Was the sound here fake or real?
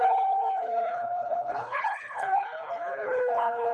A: fake